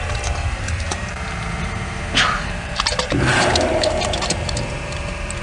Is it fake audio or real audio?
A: fake